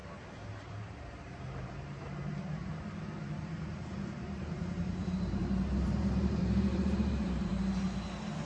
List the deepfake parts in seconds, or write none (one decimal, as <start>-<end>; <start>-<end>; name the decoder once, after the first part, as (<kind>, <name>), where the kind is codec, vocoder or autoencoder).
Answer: 0.6-7.5 (vocoder, BigVGAN v2)